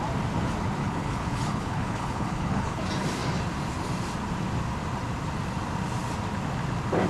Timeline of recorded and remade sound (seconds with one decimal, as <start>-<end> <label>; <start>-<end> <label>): 0.0-0.8 recorded; 0.8-2.8 remade; 2.8-7.1 recorded